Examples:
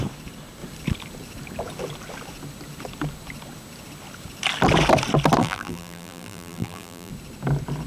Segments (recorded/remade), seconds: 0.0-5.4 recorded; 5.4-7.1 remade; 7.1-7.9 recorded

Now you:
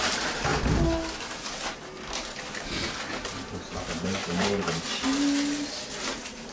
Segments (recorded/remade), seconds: 0.0-0.5 remade; 0.5-2.5 recorded; 2.5-4.2 remade; 4.2-6.0 recorded; 6.0-6.5 remade

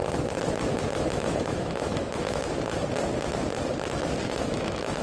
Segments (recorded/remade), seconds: 0.0-0.7 recorded; 0.7-2.4 remade; 2.4-4.4 recorded; 4.4-5.0 remade

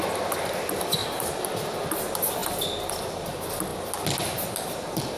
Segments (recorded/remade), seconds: 0.0-5.2 recorded

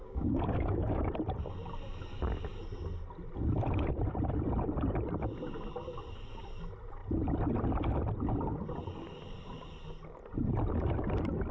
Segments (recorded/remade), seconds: 0.0-1.1 remade; 1.1-11.5 recorded

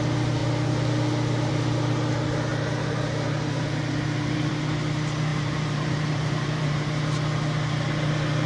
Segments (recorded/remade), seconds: 0.0-2.5 recorded; 2.5-4.5 remade; 4.5-5.3 recorded; 5.3-6.8 remade; 6.8-8.5 recorded

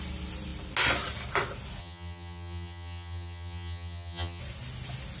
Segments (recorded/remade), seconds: 0.0-1.8 recorded; 1.8-4.4 remade; 4.4-5.2 recorded

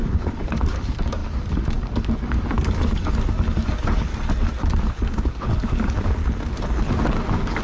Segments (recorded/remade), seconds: 0.0-4.1 remade; 4.1-4.9 recorded; 4.9-6.2 remade; 6.2-7.1 recorded; 7.1-7.6 remade